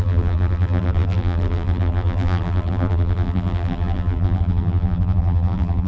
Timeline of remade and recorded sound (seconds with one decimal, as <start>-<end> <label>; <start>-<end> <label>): 0.0-5.9 remade